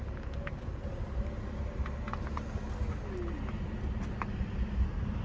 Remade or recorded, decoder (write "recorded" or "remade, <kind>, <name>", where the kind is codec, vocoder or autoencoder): recorded